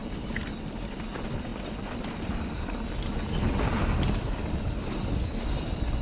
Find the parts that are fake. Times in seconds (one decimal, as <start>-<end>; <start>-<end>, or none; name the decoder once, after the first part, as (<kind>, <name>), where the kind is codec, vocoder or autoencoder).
none